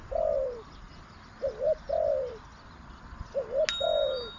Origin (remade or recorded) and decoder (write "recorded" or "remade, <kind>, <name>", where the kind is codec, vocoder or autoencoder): recorded